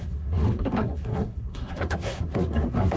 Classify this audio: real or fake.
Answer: fake